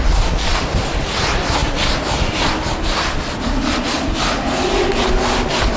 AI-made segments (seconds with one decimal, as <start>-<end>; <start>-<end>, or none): none